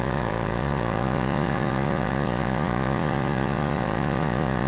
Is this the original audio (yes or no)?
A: no